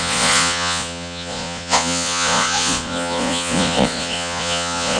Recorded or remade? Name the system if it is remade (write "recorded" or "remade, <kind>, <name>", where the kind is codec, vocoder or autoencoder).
remade, vocoder, Vocos